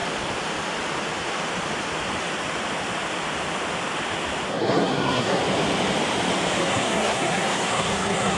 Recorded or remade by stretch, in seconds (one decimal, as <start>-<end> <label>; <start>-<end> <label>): 0.0-4.5 recorded; 4.5-5.4 remade; 5.4-6.6 recorded; 6.6-8.4 remade